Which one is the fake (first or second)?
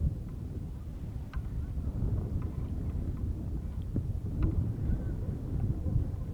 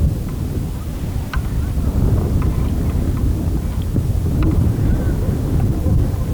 first